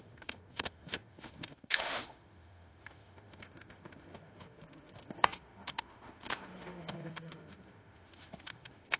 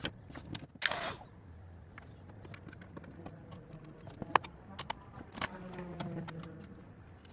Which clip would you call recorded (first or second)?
second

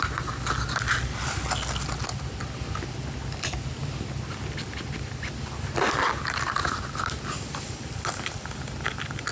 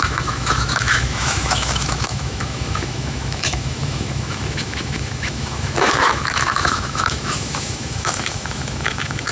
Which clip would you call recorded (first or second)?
first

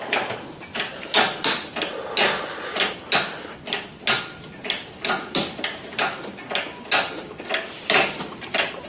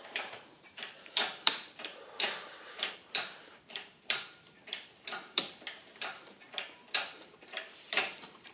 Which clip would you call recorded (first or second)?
first